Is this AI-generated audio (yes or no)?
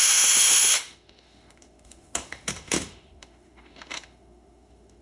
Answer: yes